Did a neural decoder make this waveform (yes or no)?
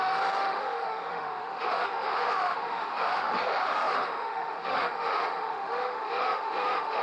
yes